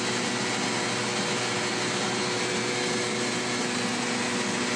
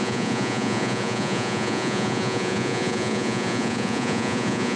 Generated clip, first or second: second